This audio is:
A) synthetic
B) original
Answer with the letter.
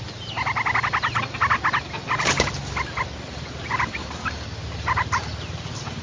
B